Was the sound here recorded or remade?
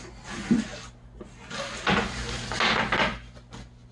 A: recorded